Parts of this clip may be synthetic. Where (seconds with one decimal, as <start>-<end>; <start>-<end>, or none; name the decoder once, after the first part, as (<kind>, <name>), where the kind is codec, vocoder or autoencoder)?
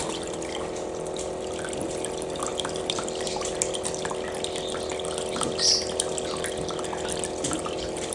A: 2.5-4.1 (vocoder, BigVGAN v2); 4.9-6.5